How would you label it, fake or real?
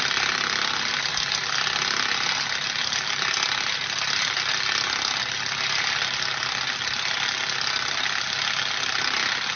real